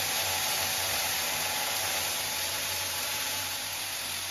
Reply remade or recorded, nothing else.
remade